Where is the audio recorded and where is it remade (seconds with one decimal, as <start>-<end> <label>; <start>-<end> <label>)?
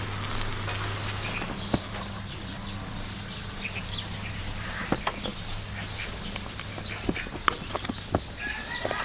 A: 0.0-9.0 recorded